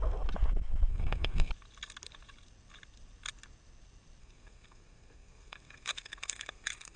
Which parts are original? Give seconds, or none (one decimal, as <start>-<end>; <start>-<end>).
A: 0.0-0.9; 1.5-4.2